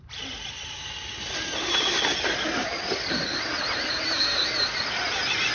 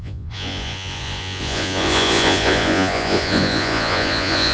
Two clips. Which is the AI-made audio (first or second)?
second